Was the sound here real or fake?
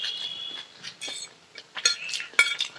real